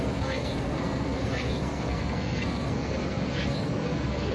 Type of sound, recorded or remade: remade